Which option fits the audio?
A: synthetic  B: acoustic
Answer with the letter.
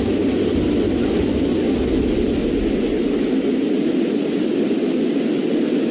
B